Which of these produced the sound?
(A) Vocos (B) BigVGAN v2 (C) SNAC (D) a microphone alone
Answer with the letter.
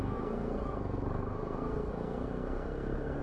C